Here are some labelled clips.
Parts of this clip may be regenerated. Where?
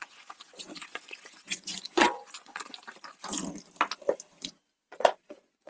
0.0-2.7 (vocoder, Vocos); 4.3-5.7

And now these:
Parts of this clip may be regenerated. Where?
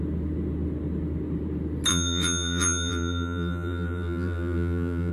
1.9-5.1 (vocoder, BigVGAN v2)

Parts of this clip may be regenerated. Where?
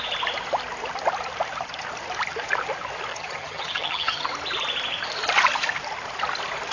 3.1-4.3 (vocoder, HiFi-GAN)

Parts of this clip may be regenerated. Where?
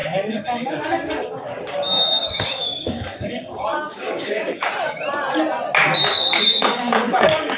0.0-4.7 (codec, DAC); 6.1-7.6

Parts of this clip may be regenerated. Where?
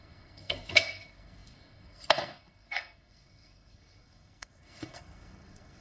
0.0-5.8 (codec, SNAC)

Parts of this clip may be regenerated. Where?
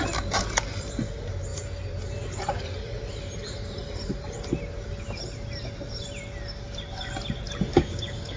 7.7-8.4 (codec, DAC)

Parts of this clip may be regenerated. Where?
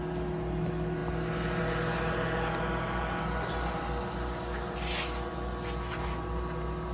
none